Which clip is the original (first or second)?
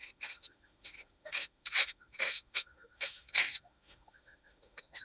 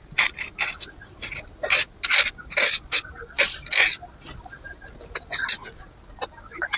second